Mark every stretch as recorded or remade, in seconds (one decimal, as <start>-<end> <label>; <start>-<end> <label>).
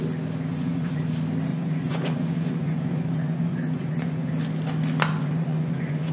0.0-0.5 recorded; 0.5-1.0 remade; 1.0-1.5 recorded; 1.5-4.3 remade; 4.3-5.2 recorded; 5.2-6.1 remade